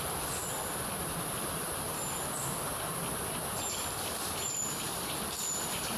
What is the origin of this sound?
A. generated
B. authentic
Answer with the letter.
A